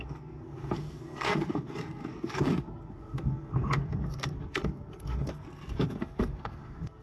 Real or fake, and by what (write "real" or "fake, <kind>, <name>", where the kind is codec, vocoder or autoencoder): fake, codec, SNAC